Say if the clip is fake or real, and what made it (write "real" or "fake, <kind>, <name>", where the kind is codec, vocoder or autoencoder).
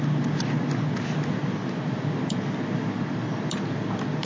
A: real